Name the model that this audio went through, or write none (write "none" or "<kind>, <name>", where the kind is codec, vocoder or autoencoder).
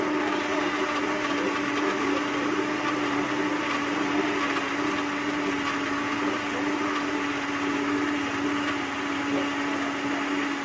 none